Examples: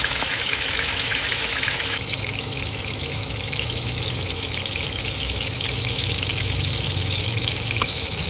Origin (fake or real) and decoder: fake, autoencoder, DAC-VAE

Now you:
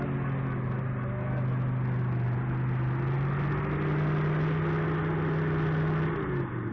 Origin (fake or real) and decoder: real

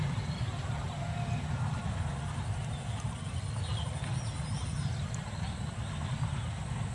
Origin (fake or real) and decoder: real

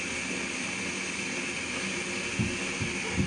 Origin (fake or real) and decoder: real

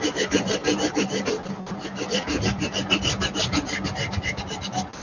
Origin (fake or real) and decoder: real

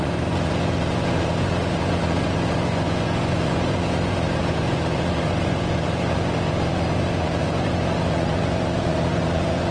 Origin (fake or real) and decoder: fake, vocoder, Vocos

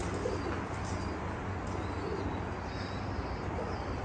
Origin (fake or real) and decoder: real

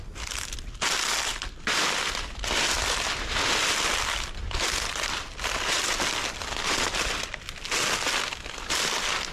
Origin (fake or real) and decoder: real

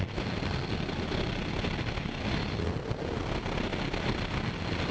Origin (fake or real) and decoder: real